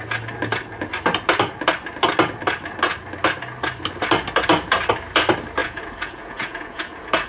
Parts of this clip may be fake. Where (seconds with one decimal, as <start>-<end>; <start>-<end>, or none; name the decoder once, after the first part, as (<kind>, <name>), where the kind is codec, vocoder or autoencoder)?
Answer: 5.6-7.3 (vocoder, Vocos)

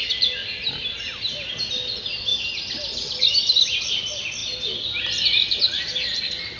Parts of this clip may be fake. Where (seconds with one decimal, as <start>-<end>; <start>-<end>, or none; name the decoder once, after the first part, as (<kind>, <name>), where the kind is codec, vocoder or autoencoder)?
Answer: none

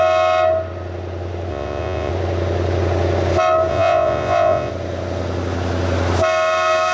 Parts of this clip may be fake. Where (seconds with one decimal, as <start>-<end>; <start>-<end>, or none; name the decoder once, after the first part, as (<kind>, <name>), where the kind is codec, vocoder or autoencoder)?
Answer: 1.5-2.1 (vocoder, Vocos); 3.7-4.7

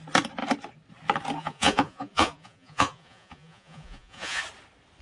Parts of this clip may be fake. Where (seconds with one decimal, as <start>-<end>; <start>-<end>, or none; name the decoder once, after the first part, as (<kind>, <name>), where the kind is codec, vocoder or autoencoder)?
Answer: 1.4-4.4 (vocoder, Vocos)